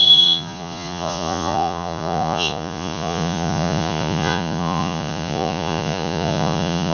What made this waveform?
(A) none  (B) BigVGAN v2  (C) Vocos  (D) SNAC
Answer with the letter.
C